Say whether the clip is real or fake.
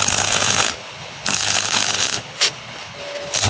fake